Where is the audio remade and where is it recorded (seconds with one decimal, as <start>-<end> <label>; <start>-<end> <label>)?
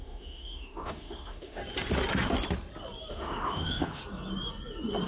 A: 0.0-1.6 remade; 1.6-3.1 recorded; 3.1-4.0 remade; 4.0-5.1 recorded